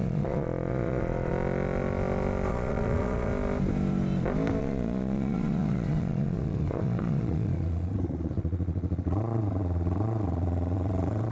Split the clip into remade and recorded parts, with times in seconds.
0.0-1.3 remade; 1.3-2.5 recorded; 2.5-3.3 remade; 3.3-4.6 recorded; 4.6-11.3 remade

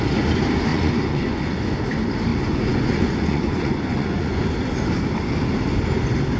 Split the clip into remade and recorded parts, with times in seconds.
0.0-0.7 recorded; 0.7-1.6 remade; 1.6-2.3 recorded; 2.3-4.4 remade; 4.4-6.4 recorded

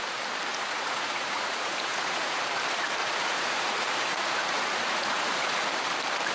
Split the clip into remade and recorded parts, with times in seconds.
0.0-0.5 recorded; 0.5-2.4 remade; 2.4-3.0 recorded; 3.0-5.7 remade; 5.7-6.3 recorded

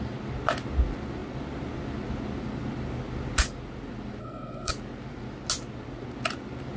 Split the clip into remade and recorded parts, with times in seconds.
0.0-4.2 recorded; 4.2-4.7 remade; 4.7-6.8 recorded

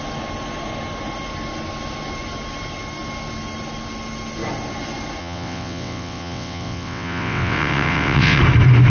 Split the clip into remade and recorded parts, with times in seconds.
0.0-5.2 recorded; 5.2-8.4 remade; 8.4-8.9 recorded

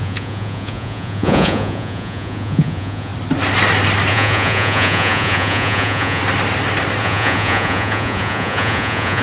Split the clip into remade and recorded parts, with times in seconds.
0.0-3.1 remade; 3.1-4.1 recorded; 4.1-6.2 remade; 6.2-7.0 recorded; 7.0-9.2 remade

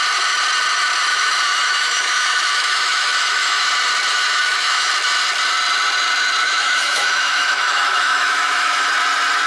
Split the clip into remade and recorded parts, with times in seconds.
0.0-1.1 recorded; 1.1-3.6 remade; 3.6-4.1 recorded; 4.1-4.9 remade; 4.9-6.4 recorded; 6.4-8.9 remade; 8.9-9.5 recorded

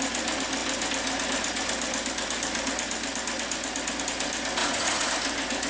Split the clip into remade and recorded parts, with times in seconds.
0.0-4.6 recorded; 4.6-5.1 remade; 5.1-5.7 recorded